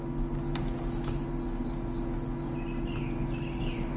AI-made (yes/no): no